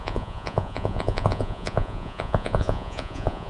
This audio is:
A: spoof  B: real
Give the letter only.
A